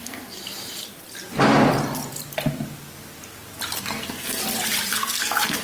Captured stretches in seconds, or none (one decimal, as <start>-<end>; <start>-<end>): 0.4-3.8; 4.4-4.9